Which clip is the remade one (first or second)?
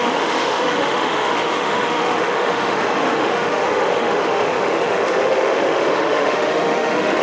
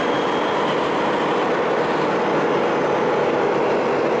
first